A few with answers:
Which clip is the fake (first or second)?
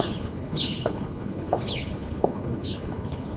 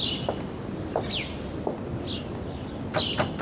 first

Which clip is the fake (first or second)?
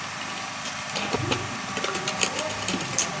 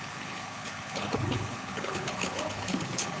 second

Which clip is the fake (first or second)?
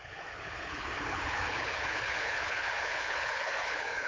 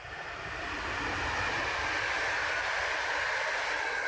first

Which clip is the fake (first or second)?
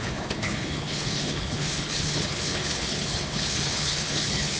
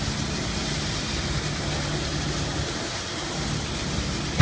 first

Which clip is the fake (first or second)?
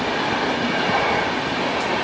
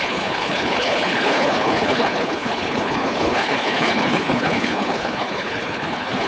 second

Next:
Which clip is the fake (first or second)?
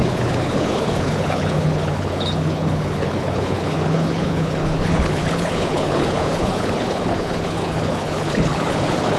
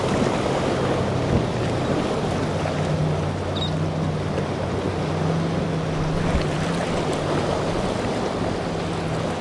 first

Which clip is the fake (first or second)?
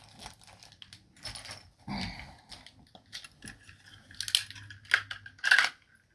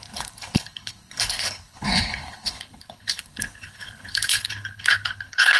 second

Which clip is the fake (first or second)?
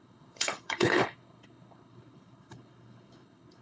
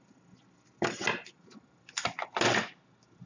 first